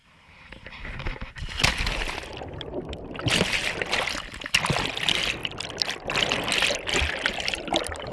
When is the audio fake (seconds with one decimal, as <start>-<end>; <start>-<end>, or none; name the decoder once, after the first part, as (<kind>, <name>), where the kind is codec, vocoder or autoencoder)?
none